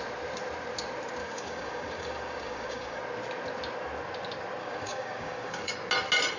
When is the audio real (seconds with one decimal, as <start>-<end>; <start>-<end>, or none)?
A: 0.0-1.2; 3.0-4.6; 5.7-6.4